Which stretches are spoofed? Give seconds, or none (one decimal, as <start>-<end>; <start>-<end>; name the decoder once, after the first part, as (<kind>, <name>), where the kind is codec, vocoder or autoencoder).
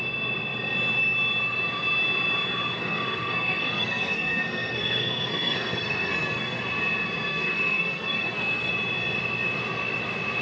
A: 2.8-6.6 (codec, SNAC); 7.3-8.7